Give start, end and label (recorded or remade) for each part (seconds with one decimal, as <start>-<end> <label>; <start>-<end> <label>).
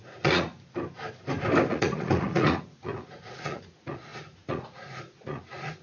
0.0-0.5 remade; 0.5-1.7 recorded; 1.7-5.8 remade